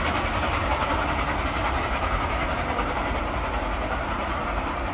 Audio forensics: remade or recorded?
remade